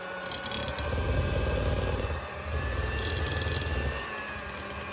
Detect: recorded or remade recorded